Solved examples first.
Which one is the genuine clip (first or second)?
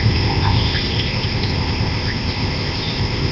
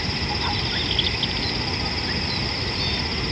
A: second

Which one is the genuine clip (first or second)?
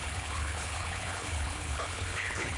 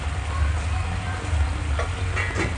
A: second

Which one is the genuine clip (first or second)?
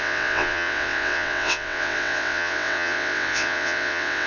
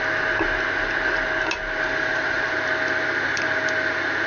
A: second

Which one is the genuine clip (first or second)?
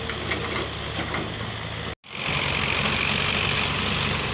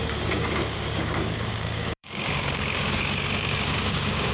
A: first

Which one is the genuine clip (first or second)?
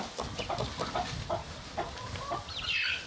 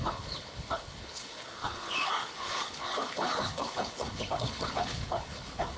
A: first